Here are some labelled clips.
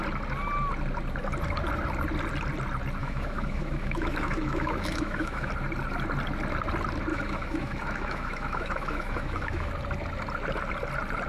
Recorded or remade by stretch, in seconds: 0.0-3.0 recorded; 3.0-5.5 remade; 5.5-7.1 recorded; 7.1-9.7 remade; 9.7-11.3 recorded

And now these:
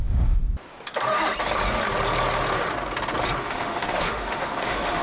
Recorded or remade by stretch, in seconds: 0.0-0.4 remade; 0.4-3.4 recorded; 3.4-5.0 remade

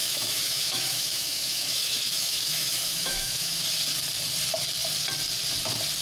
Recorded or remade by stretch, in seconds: 0.0-3.6 remade; 3.6-6.0 recorded

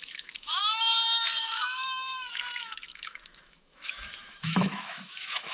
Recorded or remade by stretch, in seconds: 0.0-5.5 remade

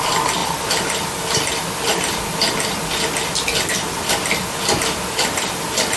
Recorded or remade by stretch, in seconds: 0.0-6.0 recorded

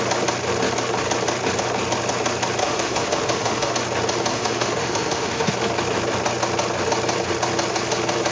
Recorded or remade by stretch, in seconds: 0.0-2.6 recorded; 2.6-3.7 remade; 3.7-4.3 recorded; 4.3-5.5 remade; 5.5-8.3 recorded

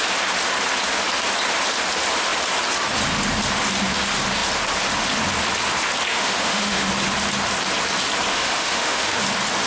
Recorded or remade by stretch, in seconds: 0.0-6.1 recorded; 6.1-6.9 remade; 6.9-8.3 recorded; 8.3-9.2 remade; 9.2-9.7 recorded